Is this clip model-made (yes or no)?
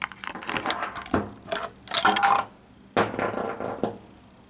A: no